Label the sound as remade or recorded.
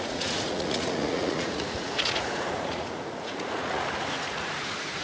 remade